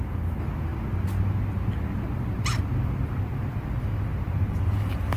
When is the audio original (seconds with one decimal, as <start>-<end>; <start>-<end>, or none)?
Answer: 0.0-5.2